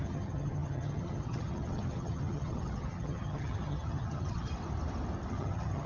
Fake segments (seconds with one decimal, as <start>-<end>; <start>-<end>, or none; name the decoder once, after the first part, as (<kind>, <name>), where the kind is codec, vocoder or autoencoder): 0.0-4.5 (vocoder, HiFi-GAN); 5.3-5.9